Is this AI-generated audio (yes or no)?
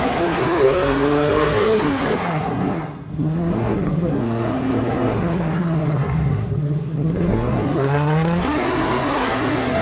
yes